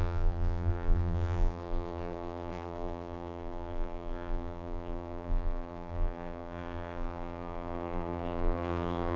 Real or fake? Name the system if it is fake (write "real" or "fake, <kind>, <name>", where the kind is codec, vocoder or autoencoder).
fake, vocoder, BigVGAN v2